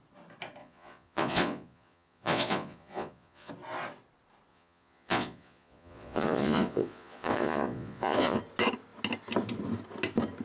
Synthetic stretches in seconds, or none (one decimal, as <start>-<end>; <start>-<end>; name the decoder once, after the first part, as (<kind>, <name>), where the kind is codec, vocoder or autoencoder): 0.6-3.5 (vocoder, Vocos); 4.5-8.4

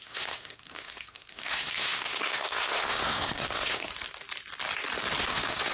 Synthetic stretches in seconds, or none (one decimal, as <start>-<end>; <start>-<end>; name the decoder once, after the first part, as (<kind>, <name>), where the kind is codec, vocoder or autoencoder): 0.0-3.9 (codec, SNAC); 5.2-5.7

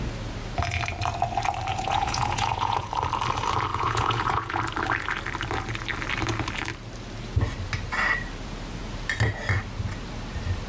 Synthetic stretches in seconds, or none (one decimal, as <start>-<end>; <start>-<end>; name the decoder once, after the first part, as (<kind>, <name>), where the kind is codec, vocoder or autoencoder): 1.7-2.9 (vocoder, Vocos); 3.7-4.6

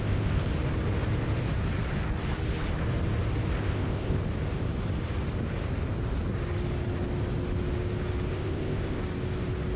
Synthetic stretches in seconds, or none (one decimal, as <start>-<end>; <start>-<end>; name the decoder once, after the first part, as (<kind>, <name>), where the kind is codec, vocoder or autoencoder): 0.0-0.5 (codec, ZipCodec); 3.6-4.2; 8.3-9.0

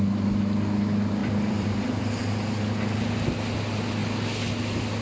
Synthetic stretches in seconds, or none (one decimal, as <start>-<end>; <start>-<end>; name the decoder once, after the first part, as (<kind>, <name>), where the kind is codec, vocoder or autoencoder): 1.2-2.0 (vocoder, BigVGAN v2)

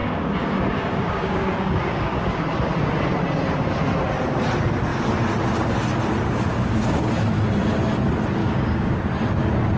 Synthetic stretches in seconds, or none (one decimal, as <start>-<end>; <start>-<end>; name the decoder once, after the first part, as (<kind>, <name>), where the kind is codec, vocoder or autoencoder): 0.0-2.4 (codec, DAC); 6.5-7.1; 8.4-9.0

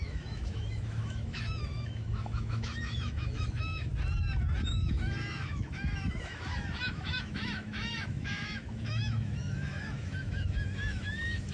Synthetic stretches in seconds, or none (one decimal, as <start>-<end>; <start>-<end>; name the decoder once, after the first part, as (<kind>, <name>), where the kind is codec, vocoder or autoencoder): 0.0-3.9 (autoencoder, DAC-VAE); 4.6-11.5

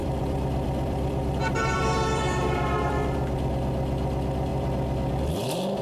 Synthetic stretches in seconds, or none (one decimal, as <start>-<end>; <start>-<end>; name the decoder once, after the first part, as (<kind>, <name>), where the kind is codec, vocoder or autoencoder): 0.0-3.5 (vocoder, BigVGAN v2)